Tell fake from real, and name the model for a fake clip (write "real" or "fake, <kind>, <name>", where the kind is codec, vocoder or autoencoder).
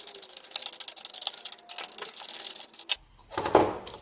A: real